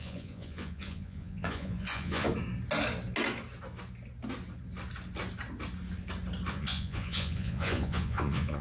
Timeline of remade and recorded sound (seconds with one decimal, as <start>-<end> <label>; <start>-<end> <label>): 0.0-2.3 remade; 2.3-6.5 recorded; 6.5-8.6 remade